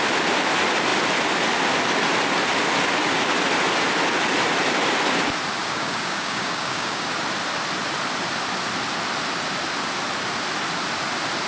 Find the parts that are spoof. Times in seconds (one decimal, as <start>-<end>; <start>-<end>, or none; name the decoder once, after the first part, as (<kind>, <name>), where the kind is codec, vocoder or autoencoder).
5.6-7.0 (codec, DAC)